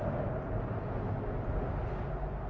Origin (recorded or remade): recorded